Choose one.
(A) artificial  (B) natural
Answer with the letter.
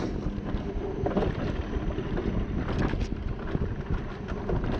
B